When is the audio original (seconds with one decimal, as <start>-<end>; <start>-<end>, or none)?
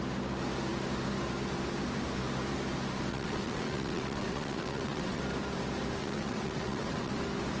0.0-3.1; 5.2-6.0; 7.1-7.6